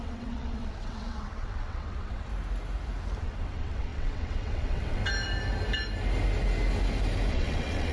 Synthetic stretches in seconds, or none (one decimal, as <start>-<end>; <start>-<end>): 0.0-2.3; 3.2-5.0; 7.3-7.9